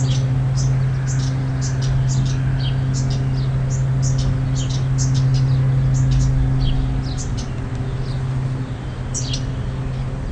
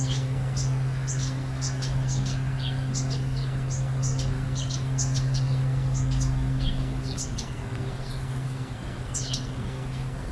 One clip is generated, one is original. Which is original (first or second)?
first